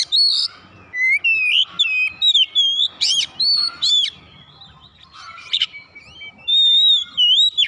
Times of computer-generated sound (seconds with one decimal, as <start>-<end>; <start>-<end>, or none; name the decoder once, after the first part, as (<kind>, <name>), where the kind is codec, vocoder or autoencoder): none